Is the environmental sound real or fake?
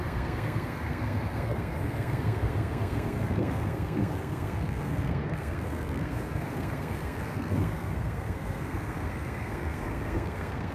fake